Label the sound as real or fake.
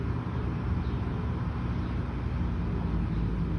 real